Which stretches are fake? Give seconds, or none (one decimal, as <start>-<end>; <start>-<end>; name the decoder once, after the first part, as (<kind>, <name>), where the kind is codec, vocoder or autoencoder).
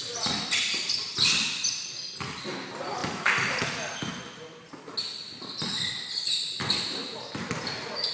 none